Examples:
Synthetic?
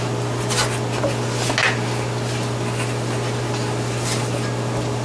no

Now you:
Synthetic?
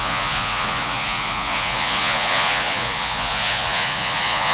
yes